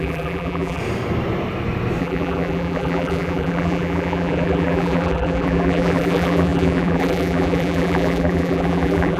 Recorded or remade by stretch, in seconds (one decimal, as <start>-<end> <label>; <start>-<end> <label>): 0.0-0.8 remade; 0.8-2.0 recorded; 2.0-9.2 remade